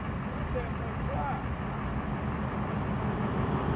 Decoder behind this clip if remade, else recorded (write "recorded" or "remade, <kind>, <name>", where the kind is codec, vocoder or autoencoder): recorded